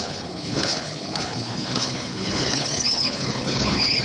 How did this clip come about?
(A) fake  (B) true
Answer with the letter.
A